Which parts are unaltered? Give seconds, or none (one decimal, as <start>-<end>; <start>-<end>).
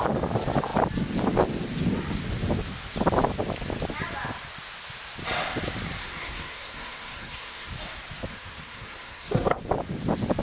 0.0-6.0; 7.7-8.3; 9.6-10.4